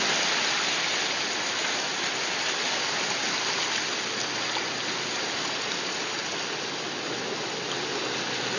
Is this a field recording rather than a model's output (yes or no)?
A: yes